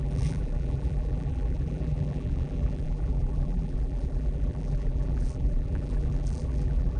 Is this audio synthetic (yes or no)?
yes